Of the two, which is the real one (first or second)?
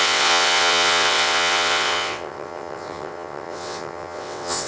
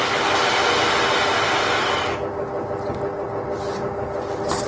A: second